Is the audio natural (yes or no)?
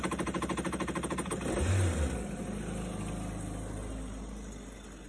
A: yes